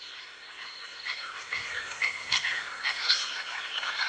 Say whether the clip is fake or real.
fake